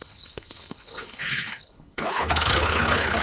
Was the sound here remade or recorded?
remade